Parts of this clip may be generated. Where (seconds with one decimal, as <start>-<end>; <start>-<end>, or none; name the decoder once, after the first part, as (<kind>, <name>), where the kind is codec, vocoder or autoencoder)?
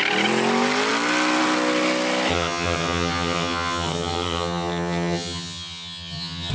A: 2.3-6.5 (vocoder, HiFi-GAN)